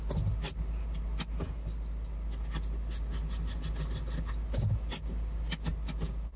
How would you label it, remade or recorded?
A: recorded